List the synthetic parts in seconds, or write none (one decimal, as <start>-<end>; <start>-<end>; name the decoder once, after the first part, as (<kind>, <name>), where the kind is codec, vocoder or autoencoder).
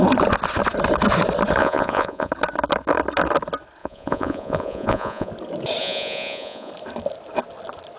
1.6-2.3 (vocoder, Vocos); 3.8-5.3; 5.8-6.7